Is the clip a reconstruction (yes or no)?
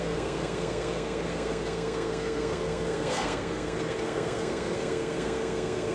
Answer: yes